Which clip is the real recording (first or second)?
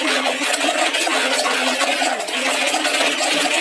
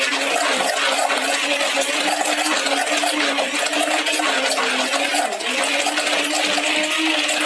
second